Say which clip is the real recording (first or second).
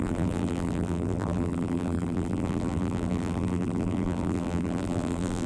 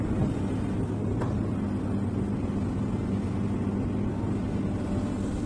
second